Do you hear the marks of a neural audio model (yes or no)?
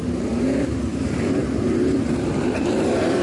yes